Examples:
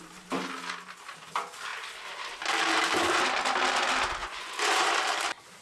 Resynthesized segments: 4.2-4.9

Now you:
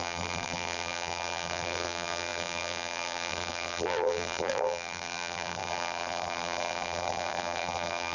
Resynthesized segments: 0.0-8.1